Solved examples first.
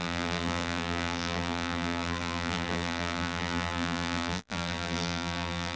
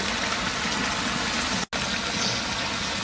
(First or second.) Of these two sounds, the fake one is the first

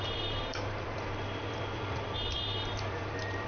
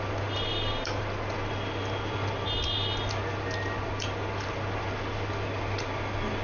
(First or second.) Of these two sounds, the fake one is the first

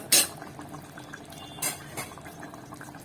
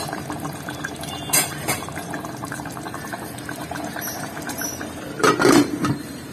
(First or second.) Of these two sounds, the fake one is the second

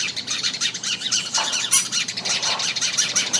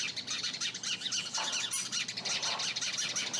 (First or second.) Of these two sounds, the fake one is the first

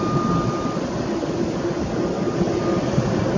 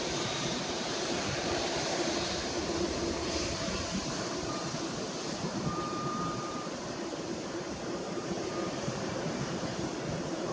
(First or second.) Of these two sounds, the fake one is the second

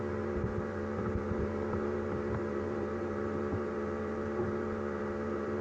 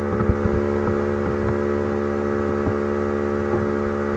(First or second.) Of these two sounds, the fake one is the first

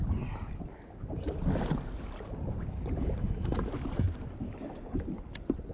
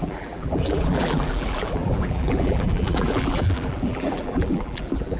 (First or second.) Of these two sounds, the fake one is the second